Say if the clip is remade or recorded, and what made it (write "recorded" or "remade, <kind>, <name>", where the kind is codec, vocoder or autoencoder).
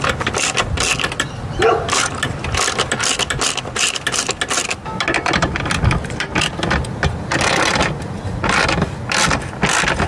recorded